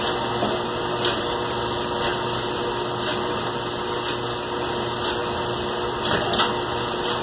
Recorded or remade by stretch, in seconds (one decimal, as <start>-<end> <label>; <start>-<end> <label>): 0.0-7.2 recorded